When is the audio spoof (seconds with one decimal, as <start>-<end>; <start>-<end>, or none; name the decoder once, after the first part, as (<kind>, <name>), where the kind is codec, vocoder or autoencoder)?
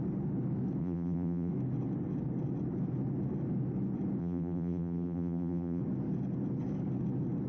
0.8-1.5 (vocoder, BigVGAN v2); 4.2-5.8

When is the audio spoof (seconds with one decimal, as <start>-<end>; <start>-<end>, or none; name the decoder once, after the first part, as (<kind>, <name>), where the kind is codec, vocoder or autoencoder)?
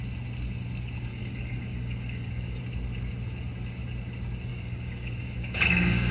1.1-2.6 (codec, DAC); 4.5-6.1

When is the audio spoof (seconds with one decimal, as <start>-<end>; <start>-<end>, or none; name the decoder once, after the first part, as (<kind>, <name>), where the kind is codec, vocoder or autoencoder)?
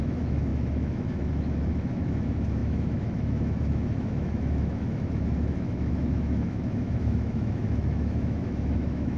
0.0-9.2 (autoencoder, DAC-VAE)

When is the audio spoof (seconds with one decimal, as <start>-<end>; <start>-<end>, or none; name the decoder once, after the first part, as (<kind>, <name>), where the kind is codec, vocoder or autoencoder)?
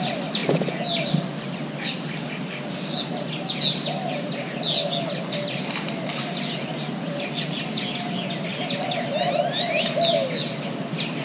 none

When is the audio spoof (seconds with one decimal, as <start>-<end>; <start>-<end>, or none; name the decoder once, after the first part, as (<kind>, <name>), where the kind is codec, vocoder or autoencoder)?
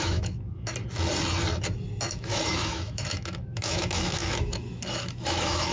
0.0-0.7 (autoencoder, DAC-VAE); 2.1-5.7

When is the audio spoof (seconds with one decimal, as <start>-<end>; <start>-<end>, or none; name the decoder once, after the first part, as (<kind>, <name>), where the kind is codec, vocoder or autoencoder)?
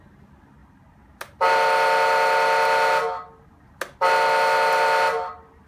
none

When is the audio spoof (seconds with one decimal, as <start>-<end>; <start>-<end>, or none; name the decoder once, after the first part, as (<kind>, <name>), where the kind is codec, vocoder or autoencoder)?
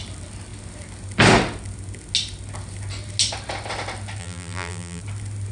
4.2-5.0 (vocoder, BigVGAN v2)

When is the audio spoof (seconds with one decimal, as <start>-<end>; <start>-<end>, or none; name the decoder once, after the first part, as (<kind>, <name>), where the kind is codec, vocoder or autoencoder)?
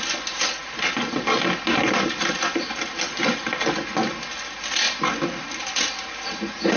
none